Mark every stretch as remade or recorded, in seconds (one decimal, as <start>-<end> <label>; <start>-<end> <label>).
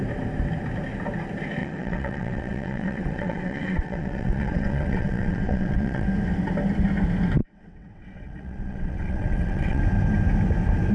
0.0-1.6 recorded; 1.6-6.1 remade; 6.1-7.4 recorded; 7.4-9.8 remade; 9.8-10.9 recorded